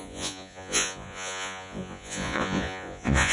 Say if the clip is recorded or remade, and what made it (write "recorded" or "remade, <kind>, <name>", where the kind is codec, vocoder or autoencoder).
remade, vocoder, Vocos